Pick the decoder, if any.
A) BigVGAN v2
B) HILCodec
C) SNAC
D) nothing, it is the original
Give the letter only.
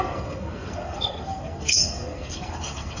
C